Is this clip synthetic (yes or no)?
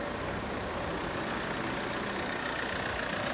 no